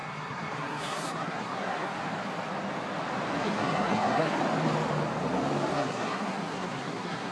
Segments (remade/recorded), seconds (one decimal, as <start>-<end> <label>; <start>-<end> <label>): 0.0-1.9 remade; 1.9-3.4 recorded; 3.4-4.4 remade; 4.4-5.7 recorded; 5.7-7.3 remade